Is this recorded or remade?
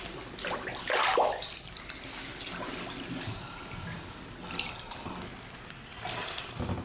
recorded